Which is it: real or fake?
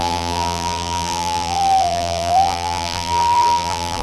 fake